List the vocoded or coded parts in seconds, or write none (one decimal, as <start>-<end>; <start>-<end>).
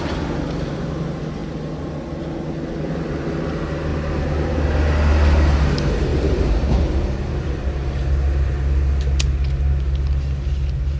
6.1-7.6